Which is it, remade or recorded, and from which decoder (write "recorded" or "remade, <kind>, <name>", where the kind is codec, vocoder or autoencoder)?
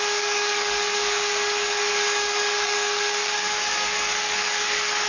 remade, codec, DAC